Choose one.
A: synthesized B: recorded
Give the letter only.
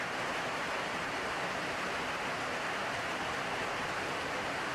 B